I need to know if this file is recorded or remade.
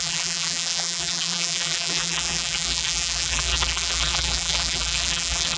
remade